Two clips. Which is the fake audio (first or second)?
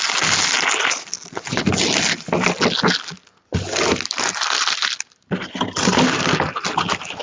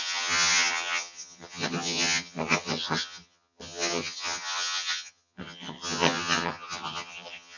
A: second